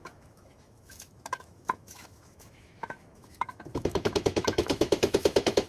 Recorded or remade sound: remade